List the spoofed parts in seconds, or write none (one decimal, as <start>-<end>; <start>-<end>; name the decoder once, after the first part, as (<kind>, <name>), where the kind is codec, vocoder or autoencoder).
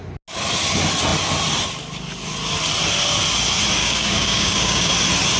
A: 3.8-4.9 (codec, DAC)